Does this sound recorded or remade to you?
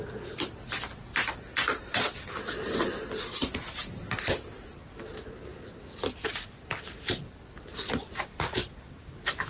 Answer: recorded